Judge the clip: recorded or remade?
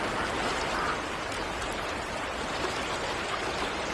recorded